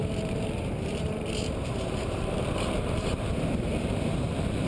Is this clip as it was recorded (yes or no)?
no